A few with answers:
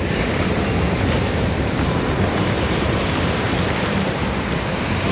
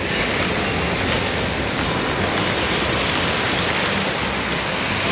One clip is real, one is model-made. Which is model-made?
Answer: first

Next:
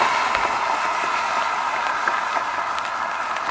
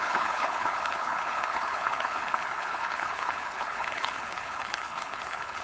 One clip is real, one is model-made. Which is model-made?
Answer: second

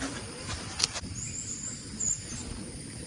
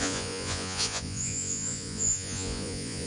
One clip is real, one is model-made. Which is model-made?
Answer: second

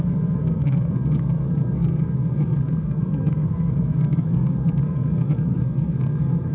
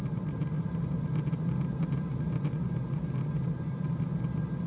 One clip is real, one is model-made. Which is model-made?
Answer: first